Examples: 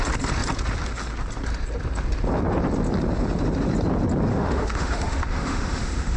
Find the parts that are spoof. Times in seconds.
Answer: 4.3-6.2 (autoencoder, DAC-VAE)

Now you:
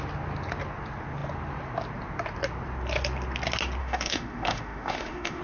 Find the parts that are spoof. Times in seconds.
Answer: 3.8-5.4 (autoencoder, DAC-VAE)

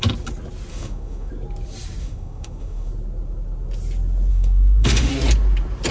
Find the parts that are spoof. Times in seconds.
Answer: 0.7-1.3 (autoencoder, DAC-VAE); 2.0-2.9; 4.3-5.1

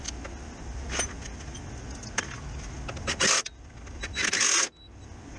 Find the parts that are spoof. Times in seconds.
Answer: none